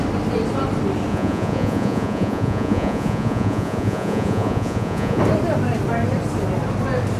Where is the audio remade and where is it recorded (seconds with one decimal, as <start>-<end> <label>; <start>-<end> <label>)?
0.0-1.1 recorded; 1.1-5.2 remade; 5.2-7.2 recorded